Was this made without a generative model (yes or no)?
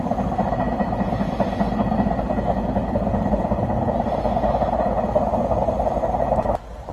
yes